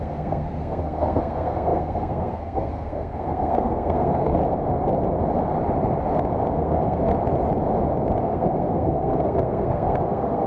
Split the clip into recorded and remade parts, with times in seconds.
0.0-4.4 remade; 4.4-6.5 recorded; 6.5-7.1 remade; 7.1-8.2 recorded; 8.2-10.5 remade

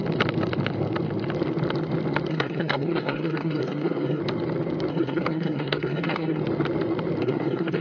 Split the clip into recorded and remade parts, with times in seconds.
0.0-2.3 recorded; 2.3-4.2 remade; 4.2-4.9 recorded; 4.9-6.4 remade; 6.4-7.2 recorded; 7.2-7.8 remade

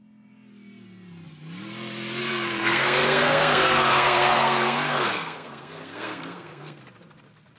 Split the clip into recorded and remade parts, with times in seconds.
0.0-2.2 recorded; 2.2-6.8 remade; 6.8-7.6 recorded

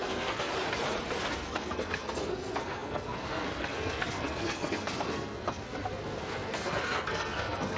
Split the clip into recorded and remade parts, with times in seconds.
0.0-0.5 remade; 0.5-1.3 recorded; 1.3-7.8 remade

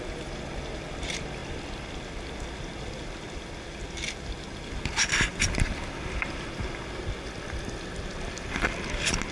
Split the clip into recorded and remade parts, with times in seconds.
0.0-9.3 recorded

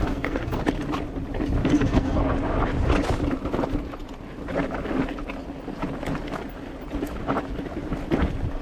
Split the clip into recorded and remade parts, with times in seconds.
0.0-0.6 remade; 0.6-1.6 recorded; 1.6-2.2 remade; 2.2-8.6 recorded

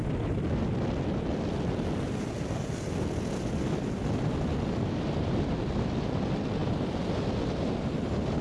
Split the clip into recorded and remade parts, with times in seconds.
0.0-8.4 recorded

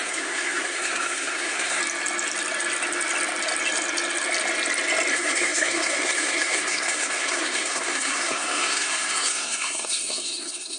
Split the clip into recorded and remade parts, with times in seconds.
0.0-1.8 remade; 1.8-5.1 recorded; 5.1-10.8 remade